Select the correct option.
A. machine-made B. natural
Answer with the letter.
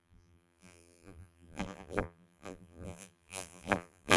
A